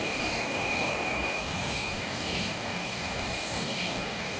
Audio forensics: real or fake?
fake